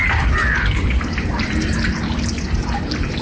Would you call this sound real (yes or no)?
no